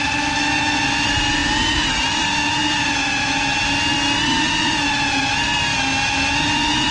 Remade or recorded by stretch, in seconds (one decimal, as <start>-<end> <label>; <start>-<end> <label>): 0.0-6.9 recorded